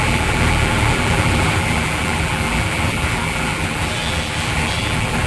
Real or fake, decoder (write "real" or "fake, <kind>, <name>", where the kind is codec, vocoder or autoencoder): fake, vocoder, BigVGAN v2